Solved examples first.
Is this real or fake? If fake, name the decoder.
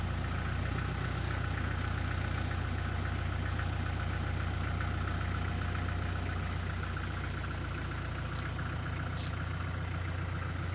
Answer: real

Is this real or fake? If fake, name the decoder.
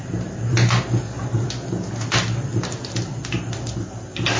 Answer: real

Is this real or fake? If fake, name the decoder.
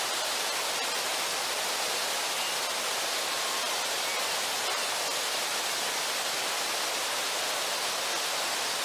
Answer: real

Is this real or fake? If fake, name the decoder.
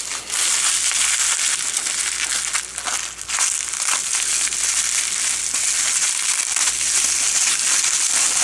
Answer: real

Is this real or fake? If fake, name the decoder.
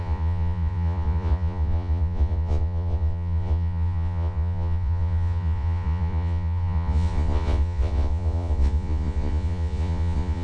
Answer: fake, vocoder, Vocos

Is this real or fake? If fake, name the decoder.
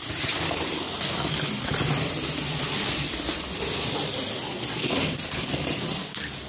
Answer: fake, vocoder, BigVGAN v2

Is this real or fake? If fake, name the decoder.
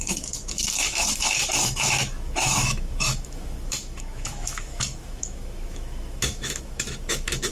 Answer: fake, autoencoder, DAC-VAE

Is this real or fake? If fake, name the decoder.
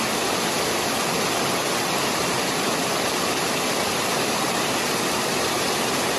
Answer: real